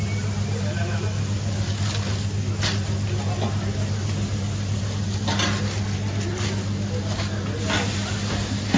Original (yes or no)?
yes